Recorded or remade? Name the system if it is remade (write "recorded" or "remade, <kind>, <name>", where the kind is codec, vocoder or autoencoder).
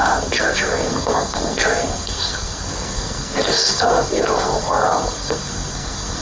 remade, codec, SNAC